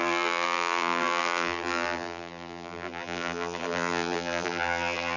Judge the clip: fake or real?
fake